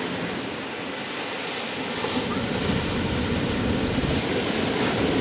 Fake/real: real